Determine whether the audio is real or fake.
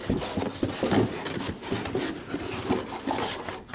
real